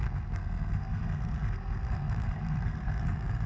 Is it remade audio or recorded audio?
remade